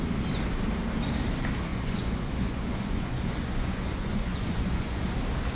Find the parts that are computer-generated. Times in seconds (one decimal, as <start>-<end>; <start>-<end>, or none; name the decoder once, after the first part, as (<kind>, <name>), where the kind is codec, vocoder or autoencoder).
1.7-5.0 (vocoder, Vocos)